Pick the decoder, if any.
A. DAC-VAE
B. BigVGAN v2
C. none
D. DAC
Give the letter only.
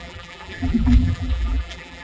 B